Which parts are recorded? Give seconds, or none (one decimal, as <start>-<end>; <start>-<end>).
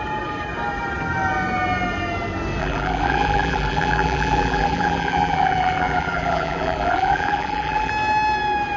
0.0-2.6; 7.9-8.8